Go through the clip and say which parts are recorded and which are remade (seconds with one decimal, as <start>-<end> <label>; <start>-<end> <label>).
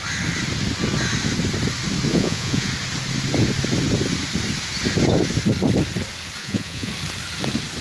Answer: 0.0-2.1 recorded; 2.1-2.7 remade; 2.7-6.4 recorded; 6.4-6.9 remade; 6.9-7.8 recorded